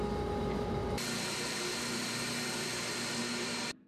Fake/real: real